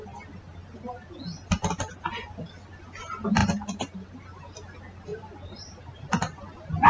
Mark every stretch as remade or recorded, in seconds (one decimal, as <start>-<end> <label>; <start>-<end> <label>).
0.0-3.4 recorded; 3.4-4.2 remade; 4.2-5.1 recorded; 5.1-6.1 remade; 6.1-6.9 recorded